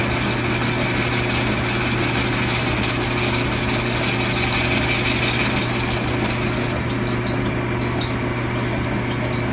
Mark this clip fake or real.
real